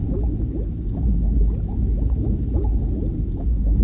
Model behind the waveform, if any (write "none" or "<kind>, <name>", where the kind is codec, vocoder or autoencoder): codec, HILCodec